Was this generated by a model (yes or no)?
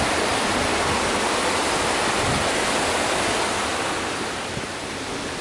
no